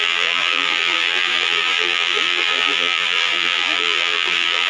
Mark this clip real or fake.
fake